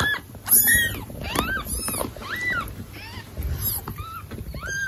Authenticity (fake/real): real